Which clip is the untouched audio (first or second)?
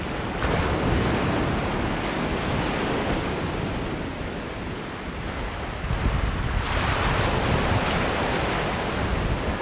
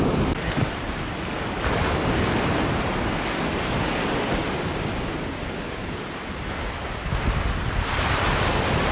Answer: first